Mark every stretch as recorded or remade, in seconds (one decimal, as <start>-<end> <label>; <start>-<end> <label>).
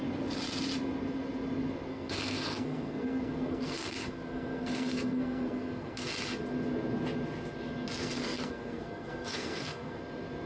0.0-1.9 recorded; 1.9-6.1 remade; 6.1-8.0 recorded; 8.0-10.0 remade; 10.0-10.5 recorded